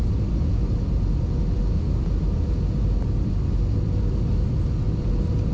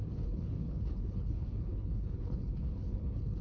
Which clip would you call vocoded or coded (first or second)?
second